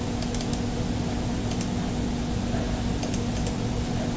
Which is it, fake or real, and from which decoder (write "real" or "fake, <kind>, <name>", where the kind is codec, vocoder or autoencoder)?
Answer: real